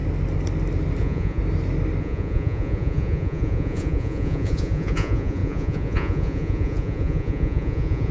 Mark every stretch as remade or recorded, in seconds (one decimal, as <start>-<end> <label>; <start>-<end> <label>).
0.0-1.0 recorded; 1.0-1.4 remade; 1.4-2.0 recorded; 2.0-8.1 remade

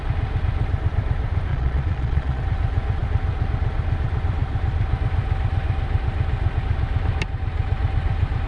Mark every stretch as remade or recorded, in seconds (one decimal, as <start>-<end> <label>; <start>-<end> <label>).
0.0-1.5 recorded; 1.5-2.4 remade; 2.4-8.5 recorded

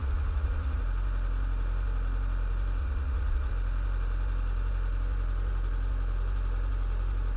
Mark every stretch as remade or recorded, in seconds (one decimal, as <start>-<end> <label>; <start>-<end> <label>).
0.0-0.8 remade; 0.8-2.8 recorded; 2.8-3.5 remade; 3.5-7.4 recorded

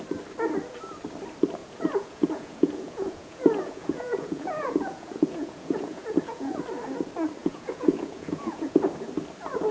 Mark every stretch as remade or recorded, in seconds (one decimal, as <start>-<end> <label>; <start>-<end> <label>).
0.0-1.6 recorded; 1.6-6.6 remade; 6.6-7.4 recorded; 7.4-8.8 remade; 8.8-9.7 recorded

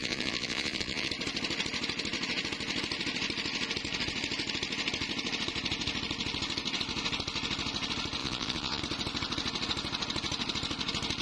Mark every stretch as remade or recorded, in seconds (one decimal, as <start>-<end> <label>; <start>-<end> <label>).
0.0-1.1 remade; 1.1-8.2 recorded; 8.2-8.8 remade; 8.8-11.2 recorded